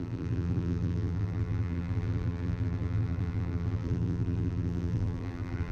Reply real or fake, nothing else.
fake